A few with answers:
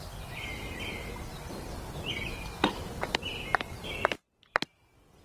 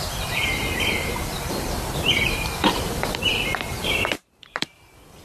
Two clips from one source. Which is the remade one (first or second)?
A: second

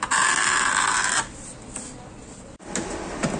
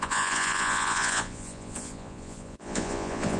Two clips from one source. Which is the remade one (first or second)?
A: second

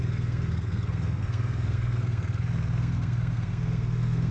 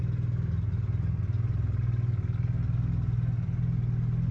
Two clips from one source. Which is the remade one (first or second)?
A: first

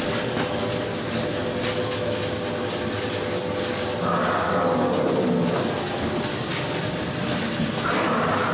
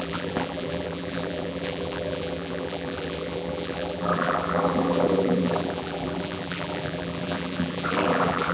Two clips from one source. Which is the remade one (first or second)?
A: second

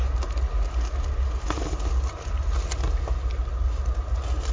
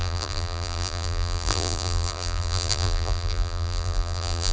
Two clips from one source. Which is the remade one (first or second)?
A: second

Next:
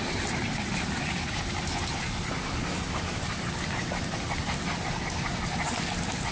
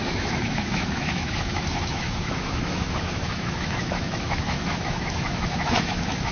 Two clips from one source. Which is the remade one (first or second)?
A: second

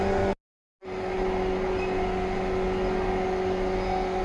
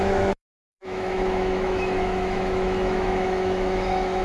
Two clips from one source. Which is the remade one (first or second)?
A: second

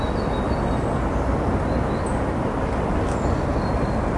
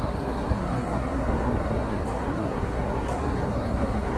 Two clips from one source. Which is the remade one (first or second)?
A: second